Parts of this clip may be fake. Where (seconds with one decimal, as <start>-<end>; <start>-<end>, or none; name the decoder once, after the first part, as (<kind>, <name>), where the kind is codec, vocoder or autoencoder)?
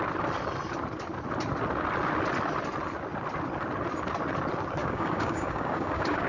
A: 4.8-6.3 (codec, DAC)